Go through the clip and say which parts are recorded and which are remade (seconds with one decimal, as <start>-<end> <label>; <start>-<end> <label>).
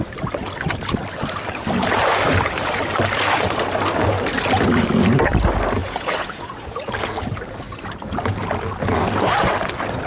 0.0-5.8 recorded; 5.8-6.9 remade; 6.9-10.1 recorded